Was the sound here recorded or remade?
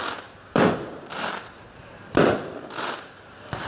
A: recorded